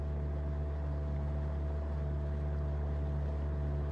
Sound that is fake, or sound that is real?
real